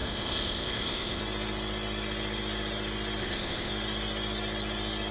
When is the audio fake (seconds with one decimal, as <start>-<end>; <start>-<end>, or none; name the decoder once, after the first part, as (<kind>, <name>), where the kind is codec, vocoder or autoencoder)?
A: 0.0-1.2 (codec, ZipCodec); 3.2-3.7